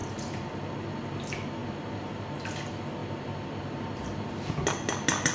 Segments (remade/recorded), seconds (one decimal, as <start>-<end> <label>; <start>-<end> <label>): 0.0-0.7 remade; 0.7-1.6 recorded; 1.6-2.1 remade; 2.1-5.3 recorded